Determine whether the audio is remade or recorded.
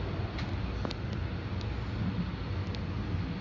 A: recorded